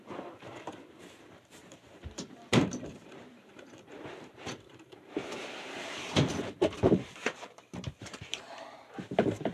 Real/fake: fake